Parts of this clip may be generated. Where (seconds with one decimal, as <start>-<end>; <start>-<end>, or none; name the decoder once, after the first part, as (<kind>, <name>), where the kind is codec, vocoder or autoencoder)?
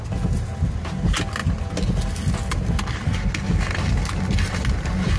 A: none